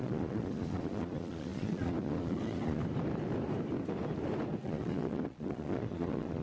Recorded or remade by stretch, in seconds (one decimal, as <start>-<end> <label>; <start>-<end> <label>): 0.0-2.8 remade; 2.8-4.6 recorded; 4.6-6.4 remade